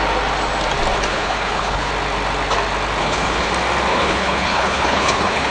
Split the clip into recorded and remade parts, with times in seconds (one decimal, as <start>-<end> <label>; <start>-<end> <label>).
0.0-1.1 recorded; 1.1-1.9 remade; 1.9-3.0 recorded; 3.0-3.5 remade; 3.5-3.9 recorded; 3.9-5.5 remade